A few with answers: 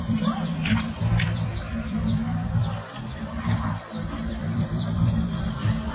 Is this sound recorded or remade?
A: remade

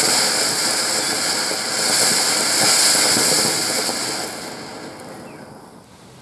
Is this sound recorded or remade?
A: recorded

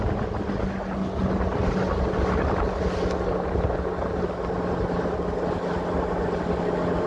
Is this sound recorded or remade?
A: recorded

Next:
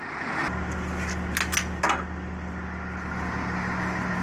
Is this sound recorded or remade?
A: recorded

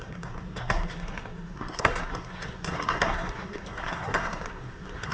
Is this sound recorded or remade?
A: remade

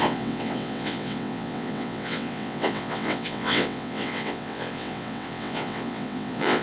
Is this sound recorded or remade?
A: remade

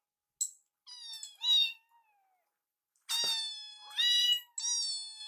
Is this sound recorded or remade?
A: recorded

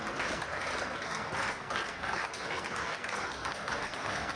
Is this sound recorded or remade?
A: remade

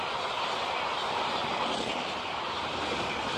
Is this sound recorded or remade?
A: recorded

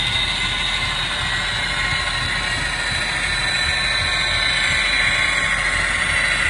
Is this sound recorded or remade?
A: recorded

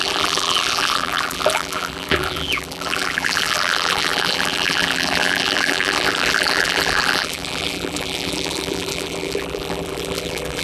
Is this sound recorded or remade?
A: remade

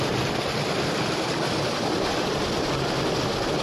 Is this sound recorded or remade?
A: recorded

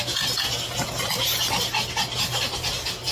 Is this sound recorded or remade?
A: recorded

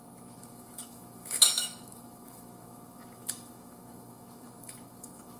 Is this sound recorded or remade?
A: remade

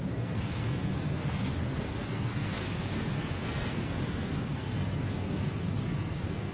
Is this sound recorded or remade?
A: remade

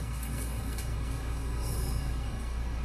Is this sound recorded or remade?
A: remade